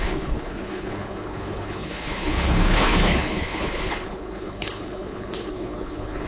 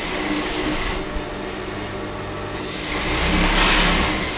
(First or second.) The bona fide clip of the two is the second